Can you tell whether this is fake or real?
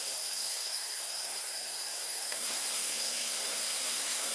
fake